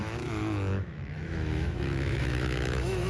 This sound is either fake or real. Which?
fake